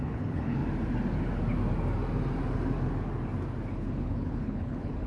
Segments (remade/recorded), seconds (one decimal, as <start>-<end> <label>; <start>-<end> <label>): 0.0-0.6 remade; 0.6-3.7 recorded; 3.7-5.1 remade